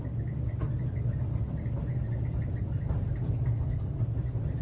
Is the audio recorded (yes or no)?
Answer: yes